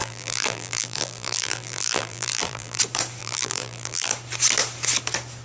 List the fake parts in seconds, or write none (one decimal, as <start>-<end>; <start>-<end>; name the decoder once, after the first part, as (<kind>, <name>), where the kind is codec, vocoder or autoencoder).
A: 0.0-2.8 (vocoder, BigVGAN v2); 3.2-4.1